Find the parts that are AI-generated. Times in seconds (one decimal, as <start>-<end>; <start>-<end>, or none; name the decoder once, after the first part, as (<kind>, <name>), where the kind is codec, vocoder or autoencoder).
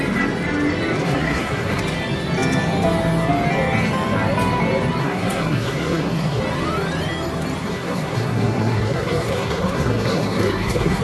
1.0-1.8 (codec, SNAC); 5.0-6.4; 7.6-11.0